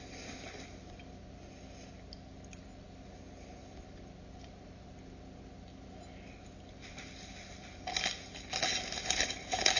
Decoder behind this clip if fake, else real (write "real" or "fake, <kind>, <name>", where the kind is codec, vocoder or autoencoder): real